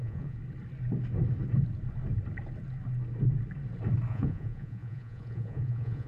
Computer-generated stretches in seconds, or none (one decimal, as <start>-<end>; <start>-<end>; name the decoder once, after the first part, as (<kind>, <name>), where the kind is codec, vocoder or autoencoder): 0.0-0.4 (vocoder, Vocos); 4.1-6.1